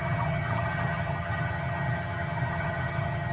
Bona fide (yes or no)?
no